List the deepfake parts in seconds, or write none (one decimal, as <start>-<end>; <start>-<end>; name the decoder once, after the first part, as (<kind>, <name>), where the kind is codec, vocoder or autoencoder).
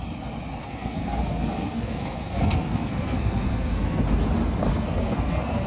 0.6-4.0 (codec, SNAC); 4.7-5.7